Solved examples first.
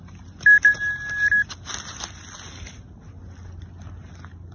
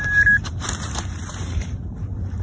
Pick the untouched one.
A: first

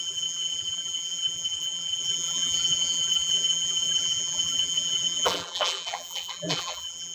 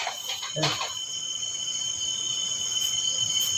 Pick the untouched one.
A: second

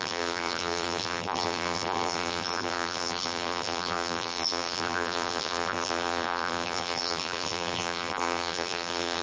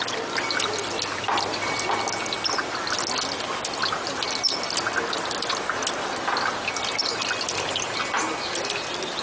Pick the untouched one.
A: second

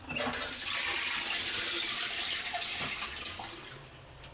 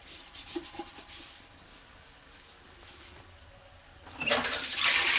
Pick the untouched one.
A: first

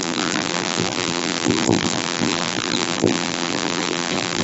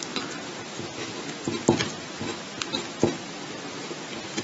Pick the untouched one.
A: second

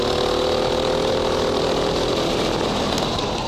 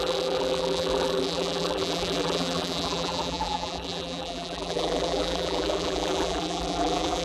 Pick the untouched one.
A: first